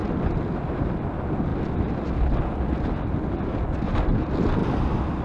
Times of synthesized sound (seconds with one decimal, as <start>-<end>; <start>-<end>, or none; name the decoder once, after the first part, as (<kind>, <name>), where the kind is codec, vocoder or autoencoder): none